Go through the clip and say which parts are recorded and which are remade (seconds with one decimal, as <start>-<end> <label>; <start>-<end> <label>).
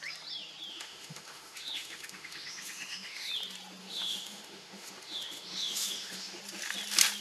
0.0-0.7 recorded; 0.7-3.3 remade; 3.3-3.8 recorded; 3.8-6.4 remade; 6.4-7.2 recorded